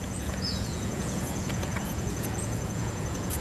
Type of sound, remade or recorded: remade